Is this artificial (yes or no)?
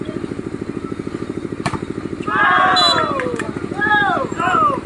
no